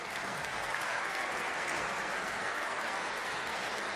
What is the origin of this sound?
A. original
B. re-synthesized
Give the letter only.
B